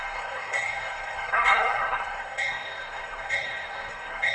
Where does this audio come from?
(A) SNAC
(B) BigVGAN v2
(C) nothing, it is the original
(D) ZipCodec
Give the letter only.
A